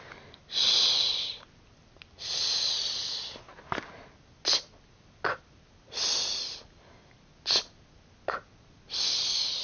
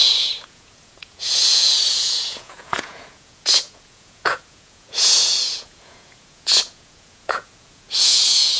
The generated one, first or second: second